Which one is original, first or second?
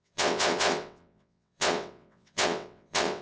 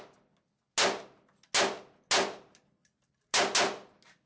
second